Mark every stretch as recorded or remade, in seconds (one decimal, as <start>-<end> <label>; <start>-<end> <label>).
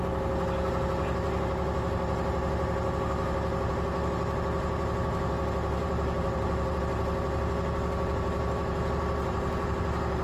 0.0-5.8 recorded; 5.8-6.8 remade; 6.8-10.2 recorded